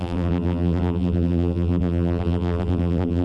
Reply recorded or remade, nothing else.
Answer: remade